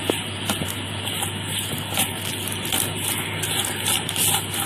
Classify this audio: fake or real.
real